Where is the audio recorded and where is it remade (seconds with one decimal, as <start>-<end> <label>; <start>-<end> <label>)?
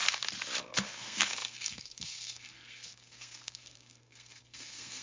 0.0-0.6 recorded; 0.6-5.0 remade